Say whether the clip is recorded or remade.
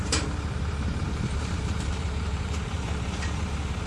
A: remade